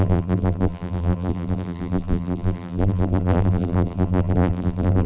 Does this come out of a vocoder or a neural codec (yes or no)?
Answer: yes